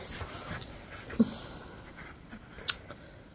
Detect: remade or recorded recorded